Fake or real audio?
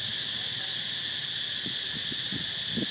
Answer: real